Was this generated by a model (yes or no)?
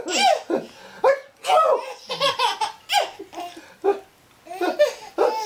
no